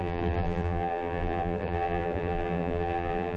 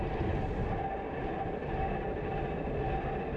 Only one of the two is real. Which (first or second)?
second